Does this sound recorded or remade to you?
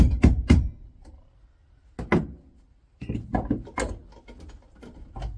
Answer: recorded